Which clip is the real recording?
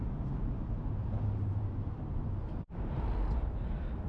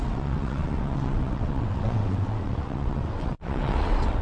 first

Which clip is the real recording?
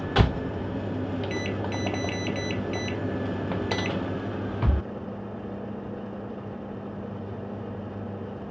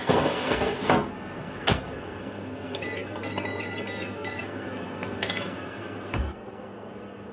first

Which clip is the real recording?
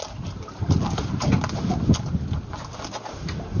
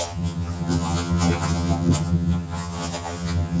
first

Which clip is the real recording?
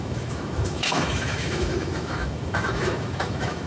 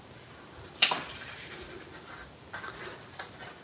second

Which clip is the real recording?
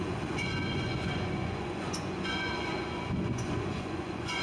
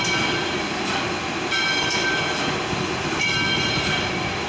second